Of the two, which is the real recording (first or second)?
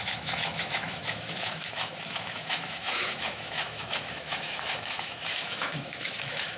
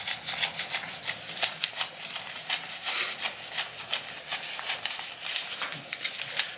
second